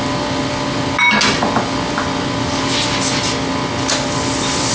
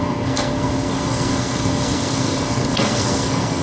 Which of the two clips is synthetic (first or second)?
second